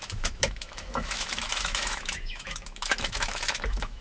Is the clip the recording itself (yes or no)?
no